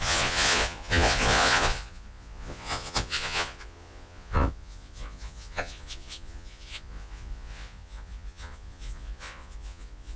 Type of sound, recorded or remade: remade